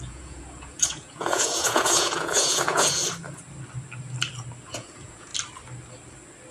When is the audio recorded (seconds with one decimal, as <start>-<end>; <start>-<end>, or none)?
3.0-4.7; 5.3-6.5